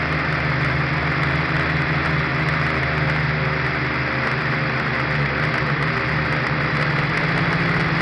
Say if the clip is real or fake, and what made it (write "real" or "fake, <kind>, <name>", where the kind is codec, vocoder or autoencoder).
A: real